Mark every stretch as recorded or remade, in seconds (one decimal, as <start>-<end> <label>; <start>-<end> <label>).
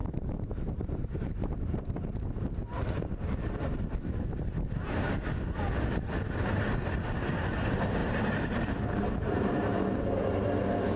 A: 0.0-4.1 remade; 4.1-8.0 recorded; 8.0-9.8 remade; 9.8-11.0 recorded